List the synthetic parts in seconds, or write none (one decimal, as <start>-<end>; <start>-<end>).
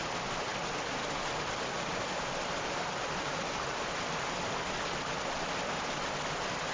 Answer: none